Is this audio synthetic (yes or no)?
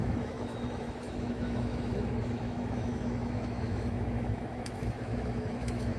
yes